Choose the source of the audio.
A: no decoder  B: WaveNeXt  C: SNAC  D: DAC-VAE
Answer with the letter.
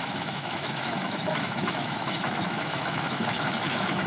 D